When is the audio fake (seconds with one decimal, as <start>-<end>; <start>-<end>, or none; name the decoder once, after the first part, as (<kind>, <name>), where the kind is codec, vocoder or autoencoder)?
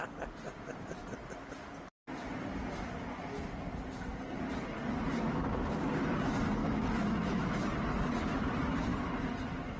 6.6-7.6 (autoencoder, DAC-VAE)